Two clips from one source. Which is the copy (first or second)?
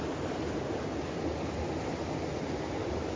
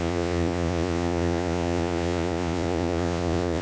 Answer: second